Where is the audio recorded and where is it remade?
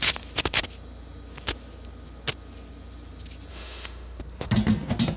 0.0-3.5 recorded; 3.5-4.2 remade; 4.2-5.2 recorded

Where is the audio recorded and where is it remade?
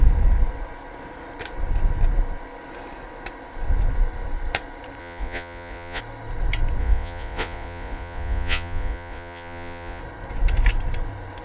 0.0-5.0 recorded; 5.0-6.0 remade; 6.0-6.8 recorded; 6.8-10.0 remade; 10.0-11.4 recorded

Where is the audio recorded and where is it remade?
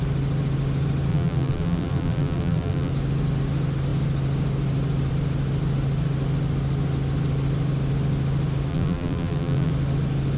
0.0-1.1 recorded; 1.1-2.9 remade; 2.9-8.7 recorded; 8.7-9.7 remade; 9.7-10.4 recorded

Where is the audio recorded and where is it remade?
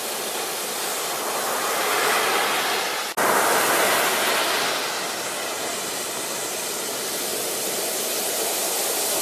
0.0-7.3 recorded; 7.3-9.2 remade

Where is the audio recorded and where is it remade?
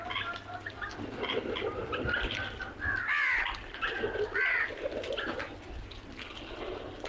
0.0-7.1 recorded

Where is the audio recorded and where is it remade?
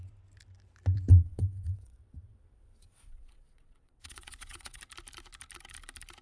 0.0-1.1 recorded; 1.1-4.8 remade; 4.8-6.2 recorded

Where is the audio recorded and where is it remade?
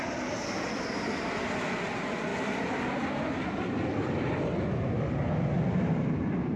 0.0-2.3 recorded; 2.3-3.0 remade; 3.0-6.6 recorded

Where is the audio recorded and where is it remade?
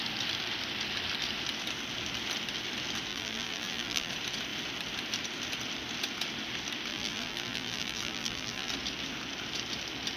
0.0-3.1 recorded; 3.1-4.1 remade; 4.1-6.9 recorded; 6.9-8.7 remade; 8.7-10.2 recorded